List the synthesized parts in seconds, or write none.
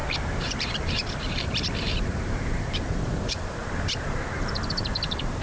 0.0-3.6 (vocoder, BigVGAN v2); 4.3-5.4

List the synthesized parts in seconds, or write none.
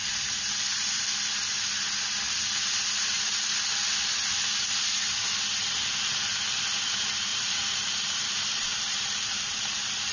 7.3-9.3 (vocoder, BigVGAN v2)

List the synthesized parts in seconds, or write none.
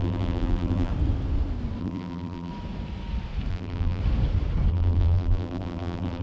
0.0-0.9 (vocoder, BigVGAN v2); 1.8-2.5; 3.5-4.0; 4.7-6.2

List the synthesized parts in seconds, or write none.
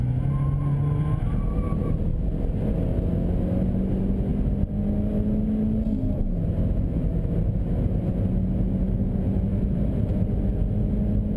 9.5-10.1 (vocoder, BigVGAN v2)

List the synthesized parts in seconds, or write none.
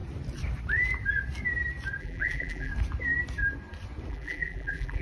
2.0-2.7 (vocoder, BigVGAN v2); 4.1-5.0